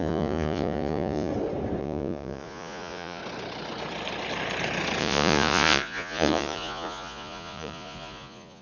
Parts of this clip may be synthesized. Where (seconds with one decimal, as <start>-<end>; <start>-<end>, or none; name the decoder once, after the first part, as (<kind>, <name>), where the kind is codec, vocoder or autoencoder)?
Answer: 0.0-1.3 (vocoder, Vocos); 1.8-3.2; 5.0-8.6